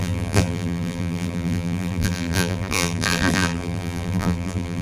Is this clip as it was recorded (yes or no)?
no